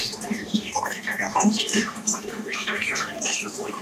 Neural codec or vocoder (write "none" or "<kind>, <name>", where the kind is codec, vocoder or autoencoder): codec, DAC